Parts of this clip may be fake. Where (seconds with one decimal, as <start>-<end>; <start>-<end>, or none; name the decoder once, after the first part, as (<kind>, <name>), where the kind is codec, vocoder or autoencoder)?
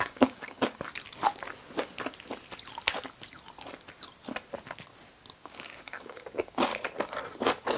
0.0-0.9 (codec, DAC); 5.4-6.7